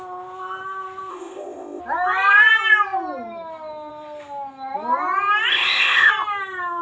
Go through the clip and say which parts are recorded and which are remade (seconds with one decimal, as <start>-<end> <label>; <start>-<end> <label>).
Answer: 0.0-1.1 recorded; 1.1-1.8 remade; 1.8-5.5 recorded; 5.5-6.1 remade; 6.1-6.8 recorded